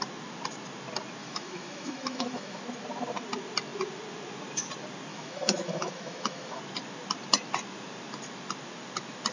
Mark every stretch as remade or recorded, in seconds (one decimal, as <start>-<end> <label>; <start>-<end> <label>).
0.0-1.2 recorded; 1.2-2.6 remade; 2.6-5.1 recorded; 5.1-6.6 remade; 6.6-9.3 recorded